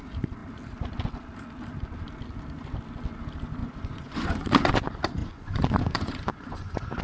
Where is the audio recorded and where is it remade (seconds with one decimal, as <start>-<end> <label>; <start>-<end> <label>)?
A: 0.0-3.6 recorded; 3.6-4.7 remade; 4.7-5.2 recorded; 5.2-7.0 remade